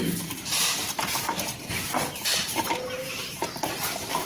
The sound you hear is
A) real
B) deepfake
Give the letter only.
B